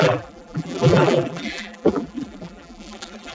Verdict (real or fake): fake